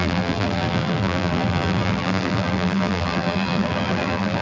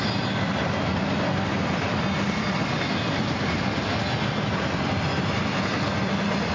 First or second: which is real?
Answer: second